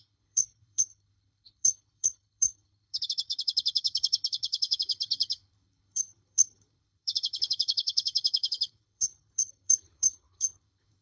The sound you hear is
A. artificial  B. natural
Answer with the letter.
A